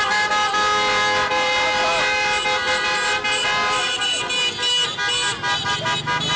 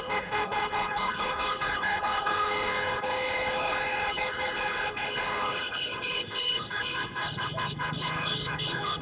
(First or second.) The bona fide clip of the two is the first